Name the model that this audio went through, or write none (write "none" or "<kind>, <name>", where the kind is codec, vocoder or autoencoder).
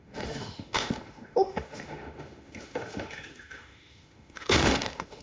autoencoder, DAC-VAE